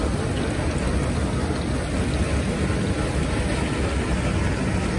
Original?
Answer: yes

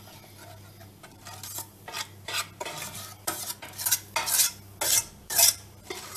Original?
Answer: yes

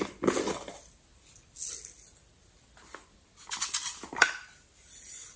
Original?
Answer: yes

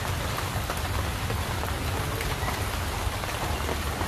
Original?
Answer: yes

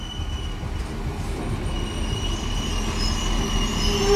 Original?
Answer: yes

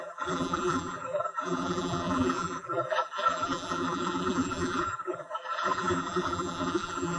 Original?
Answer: no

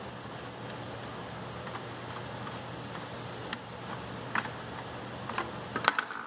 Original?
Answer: yes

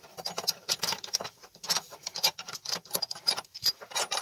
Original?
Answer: no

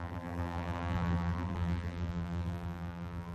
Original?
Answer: no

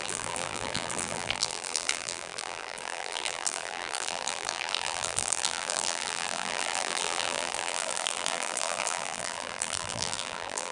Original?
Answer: no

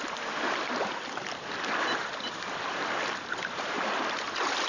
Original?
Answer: no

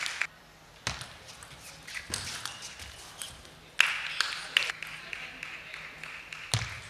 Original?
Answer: yes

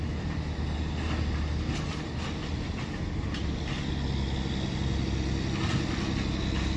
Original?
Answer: yes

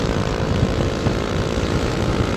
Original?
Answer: no